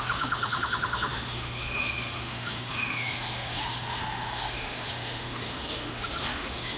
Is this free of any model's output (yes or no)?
no